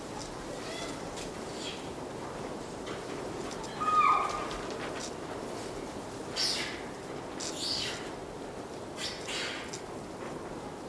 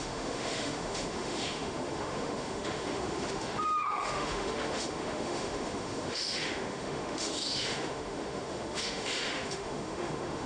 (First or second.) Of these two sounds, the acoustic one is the first